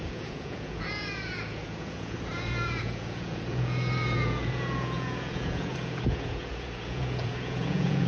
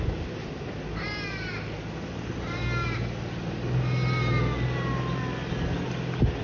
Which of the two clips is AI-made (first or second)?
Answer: first